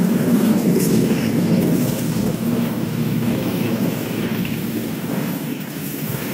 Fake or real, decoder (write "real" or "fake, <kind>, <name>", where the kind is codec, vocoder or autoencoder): fake, codec, DAC